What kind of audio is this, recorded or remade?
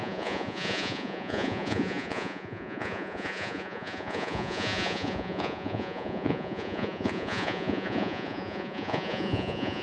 remade